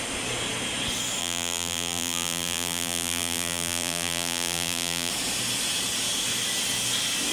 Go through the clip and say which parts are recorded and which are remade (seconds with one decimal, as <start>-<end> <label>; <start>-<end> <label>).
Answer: 0.0-1.2 recorded; 1.2-5.1 remade; 5.1-7.3 recorded